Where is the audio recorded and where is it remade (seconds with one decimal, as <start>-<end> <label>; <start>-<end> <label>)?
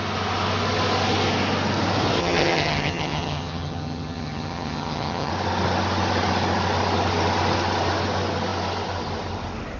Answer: 0.0-2.2 recorded; 2.2-5.3 remade; 5.3-9.8 recorded